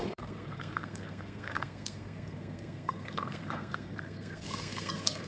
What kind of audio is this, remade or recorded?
remade